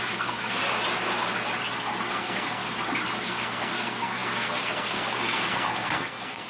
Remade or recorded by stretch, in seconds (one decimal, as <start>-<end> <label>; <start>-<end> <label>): 0.0-0.6 remade; 0.6-2.1 recorded; 2.1-2.6 remade; 2.6-3.2 recorded; 3.2-6.5 remade